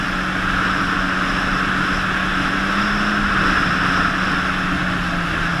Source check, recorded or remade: recorded